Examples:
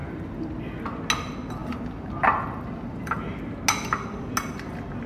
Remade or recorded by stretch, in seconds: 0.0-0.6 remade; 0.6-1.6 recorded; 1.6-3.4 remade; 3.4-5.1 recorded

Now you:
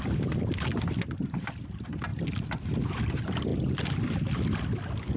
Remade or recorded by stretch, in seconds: 0.0-2.1 recorded; 2.1-3.0 remade; 3.0-5.2 recorded

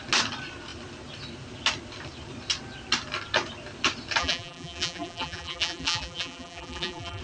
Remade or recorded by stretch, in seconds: 0.0-4.2 recorded; 4.2-7.2 remade

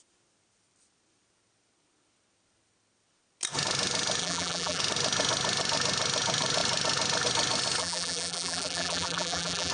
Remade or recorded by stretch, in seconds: 0.0-4.2 recorded; 4.2-4.8 remade; 4.8-7.8 recorded; 7.8-9.7 remade

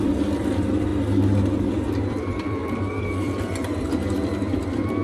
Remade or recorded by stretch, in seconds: 0.0-0.9 remade; 0.9-1.7 recorded; 1.7-5.0 remade

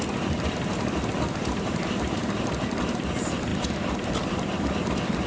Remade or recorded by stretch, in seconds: 0.0-5.3 recorded

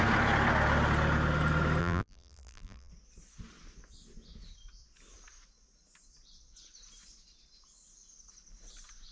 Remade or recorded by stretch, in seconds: 0.0-1.8 recorded; 1.8-2.9 remade; 2.9-9.1 recorded

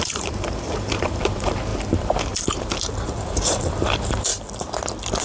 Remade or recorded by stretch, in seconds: 0.0-4.3 remade; 4.3-5.2 recorded